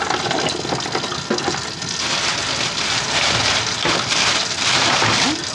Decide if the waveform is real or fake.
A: real